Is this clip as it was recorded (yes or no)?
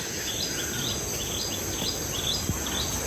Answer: yes